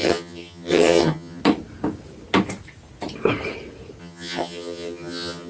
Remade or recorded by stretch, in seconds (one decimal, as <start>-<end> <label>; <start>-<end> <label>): 0.0-1.4 remade; 1.4-4.0 recorded; 4.0-5.5 remade